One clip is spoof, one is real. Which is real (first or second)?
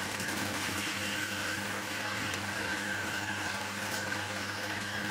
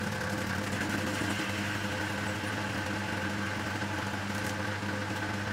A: second